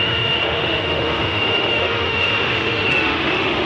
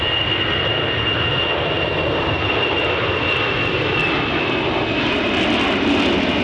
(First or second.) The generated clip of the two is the first